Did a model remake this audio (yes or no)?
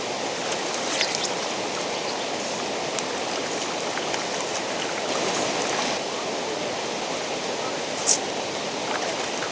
no